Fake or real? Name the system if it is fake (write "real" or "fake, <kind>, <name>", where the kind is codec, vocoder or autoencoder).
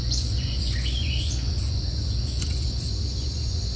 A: fake, vocoder, Vocos